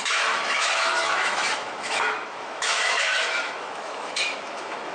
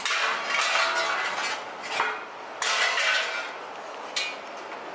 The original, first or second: second